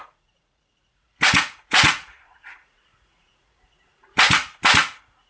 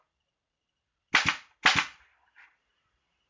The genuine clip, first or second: second